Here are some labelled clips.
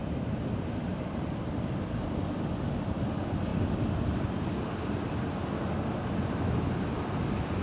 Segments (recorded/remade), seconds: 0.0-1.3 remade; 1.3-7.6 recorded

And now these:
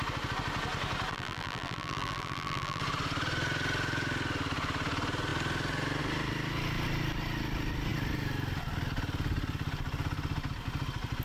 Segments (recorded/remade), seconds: 0.0-1.1 recorded; 1.1-2.8 remade; 2.8-11.2 recorded

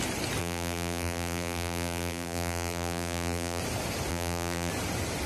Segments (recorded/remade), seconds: 0.0-0.4 recorded; 0.4-3.6 remade; 3.6-4.1 recorded; 4.1-4.7 remade; 4.7-5.3 recorded

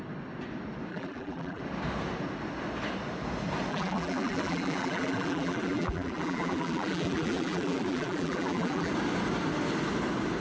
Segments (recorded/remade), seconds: 0.0-0.9 recorded; 0.9-1.6 remade; 1.6-3.7 recorded; 3.7-8.9 remade; 8.9-10.4 recorded

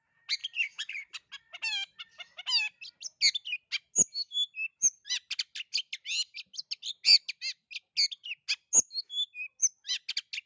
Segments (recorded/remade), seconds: 0.0-0.4 recorded; 0.4-1.3 remade; 1.3-10.5 recorded

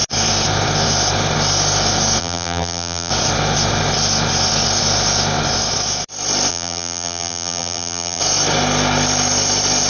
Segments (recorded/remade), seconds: 0.0-2.2 recorded; 2.2-3.1 remade; 3.1-6.5 recorded; 6.5-8.2 remade; 8.2-9.9 recorded

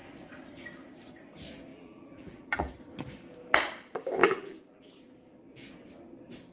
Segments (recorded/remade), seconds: 0.0-1.7 recorded; 1.7-2.7 remade; 2.7-4.2 recorded; 4.2-4.9 remade; 4.9-6.5 recorded